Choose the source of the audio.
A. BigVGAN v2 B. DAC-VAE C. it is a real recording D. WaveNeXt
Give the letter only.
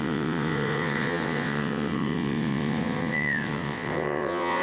D